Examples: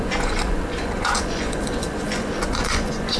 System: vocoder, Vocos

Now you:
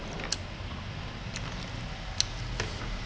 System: none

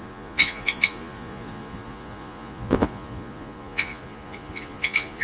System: vocoder, Vocos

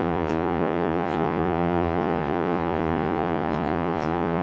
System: vocoder, Vocos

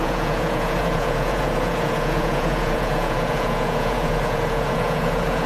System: vocoder, Vocos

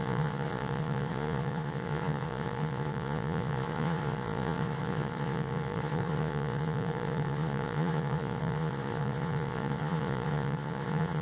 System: vocoder, Vocos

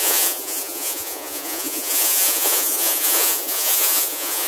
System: vocoder, Vocos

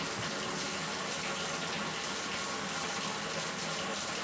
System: none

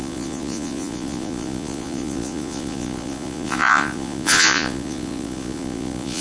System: vocoder, Vocos